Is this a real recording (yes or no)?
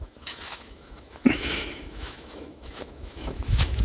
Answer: no